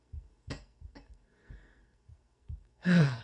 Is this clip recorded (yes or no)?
no